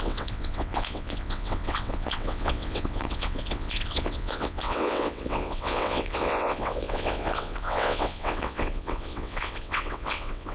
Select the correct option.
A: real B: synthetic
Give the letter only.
B